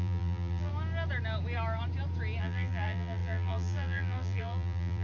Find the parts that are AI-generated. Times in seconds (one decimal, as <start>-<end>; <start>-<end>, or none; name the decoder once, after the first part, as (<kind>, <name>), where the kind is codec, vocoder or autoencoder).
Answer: 0.0-0.7 (vocoder, BigVGAN v2); 2.4-5.0